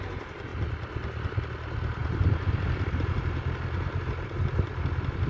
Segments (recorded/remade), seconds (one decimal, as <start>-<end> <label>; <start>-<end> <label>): 0.0-2.0 recorded; 2.0-4.0 remade; 4.0-5.3 recorded